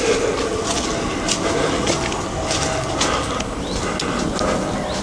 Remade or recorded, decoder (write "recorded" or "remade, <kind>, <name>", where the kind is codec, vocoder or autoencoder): recorded